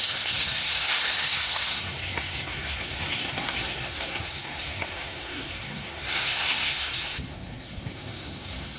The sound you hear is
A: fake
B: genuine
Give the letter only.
A